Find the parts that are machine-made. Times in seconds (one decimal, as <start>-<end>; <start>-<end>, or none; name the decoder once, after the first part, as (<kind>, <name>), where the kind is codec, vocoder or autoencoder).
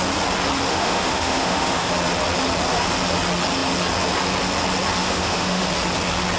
0.7-1.9 (autoencoder, DAC-VAE); 5.0-5.6